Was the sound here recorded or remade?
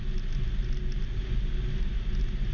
recorded